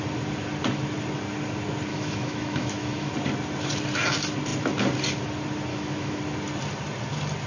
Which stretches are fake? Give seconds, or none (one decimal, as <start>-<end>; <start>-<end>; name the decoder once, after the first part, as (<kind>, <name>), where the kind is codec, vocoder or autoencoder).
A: 1.9-3.1 (autoencoder, DAC-VAE); 5.7-6.2

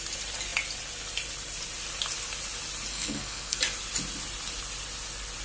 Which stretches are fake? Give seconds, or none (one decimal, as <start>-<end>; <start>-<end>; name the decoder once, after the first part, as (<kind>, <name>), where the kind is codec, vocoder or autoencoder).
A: 2.9-3.6 (codec, SNAC)

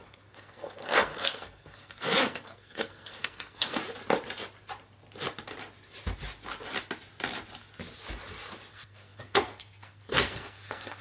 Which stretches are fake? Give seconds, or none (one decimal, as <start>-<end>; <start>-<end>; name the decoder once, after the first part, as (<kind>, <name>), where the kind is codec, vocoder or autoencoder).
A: 0.0-3.8 (codec, SNAC); 8.7-11.0

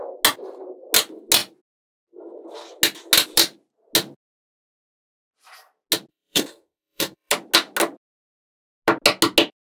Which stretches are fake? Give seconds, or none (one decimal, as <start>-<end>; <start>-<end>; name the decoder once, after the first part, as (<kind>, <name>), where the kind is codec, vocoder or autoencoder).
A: 6.1-7.3 (codec, SNAC)